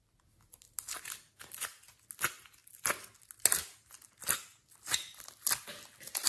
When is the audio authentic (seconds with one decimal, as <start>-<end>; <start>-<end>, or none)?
0.0-6.3